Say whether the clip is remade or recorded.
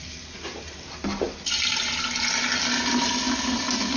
recorded